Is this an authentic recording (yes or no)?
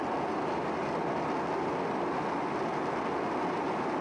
yes